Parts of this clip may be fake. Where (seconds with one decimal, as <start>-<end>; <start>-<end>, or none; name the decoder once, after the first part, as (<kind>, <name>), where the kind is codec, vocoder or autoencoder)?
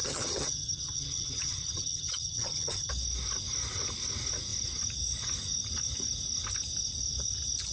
0.0-2.9 (vocoder, HiFi-GAN)